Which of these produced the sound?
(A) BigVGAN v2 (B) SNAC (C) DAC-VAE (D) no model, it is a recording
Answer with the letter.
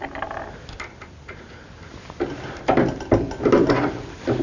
D